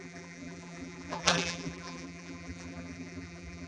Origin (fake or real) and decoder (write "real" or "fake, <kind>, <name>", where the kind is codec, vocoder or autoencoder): fake, vocoder, BigVGAN v2